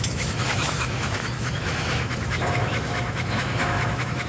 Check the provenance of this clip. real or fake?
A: fake